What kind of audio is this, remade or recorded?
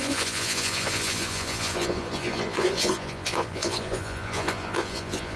remade